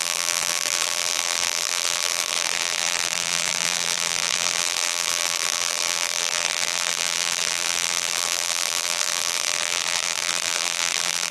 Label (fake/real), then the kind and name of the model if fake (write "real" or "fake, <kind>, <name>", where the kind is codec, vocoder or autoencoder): fake, vocoder, BigVGAN v2